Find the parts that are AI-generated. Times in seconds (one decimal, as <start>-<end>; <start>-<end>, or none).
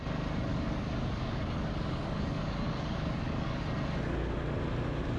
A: 0.5-3.6